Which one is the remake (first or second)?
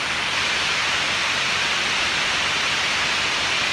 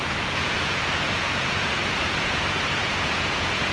second